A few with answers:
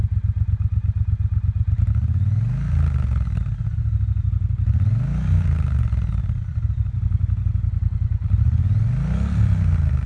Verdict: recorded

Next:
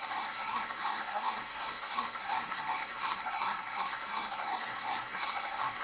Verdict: remade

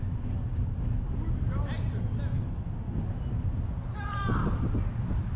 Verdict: recorded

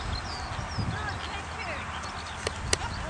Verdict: recorded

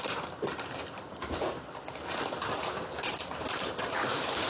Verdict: remade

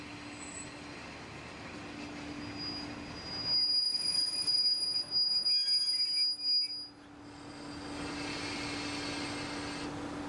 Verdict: recorded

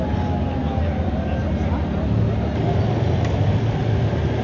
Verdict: recorded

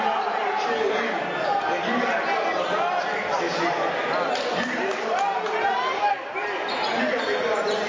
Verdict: recorded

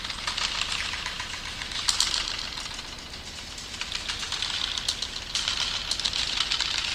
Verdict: recorded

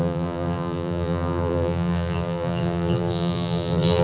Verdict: remade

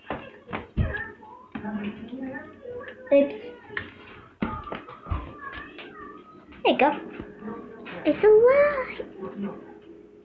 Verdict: recorded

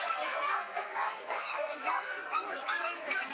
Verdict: remade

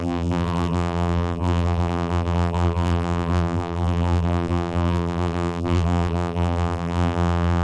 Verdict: remade